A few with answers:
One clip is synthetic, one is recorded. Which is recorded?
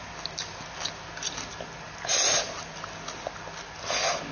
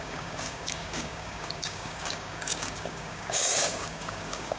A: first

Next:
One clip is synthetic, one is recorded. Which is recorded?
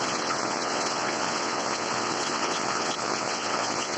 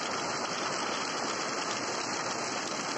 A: second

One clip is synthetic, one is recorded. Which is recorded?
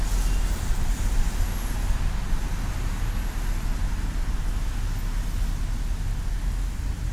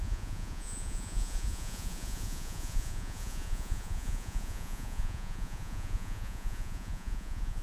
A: first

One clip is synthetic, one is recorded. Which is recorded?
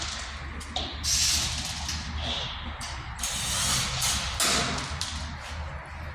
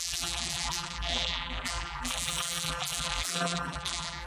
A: first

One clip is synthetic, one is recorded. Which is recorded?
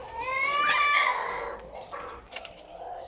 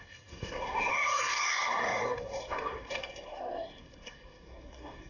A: first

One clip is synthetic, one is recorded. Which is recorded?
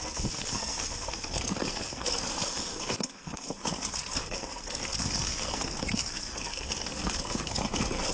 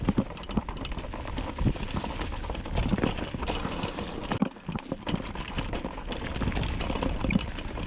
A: second